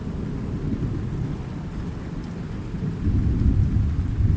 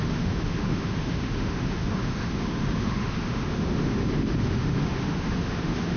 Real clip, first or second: first